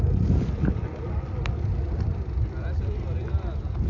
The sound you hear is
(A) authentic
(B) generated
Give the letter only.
A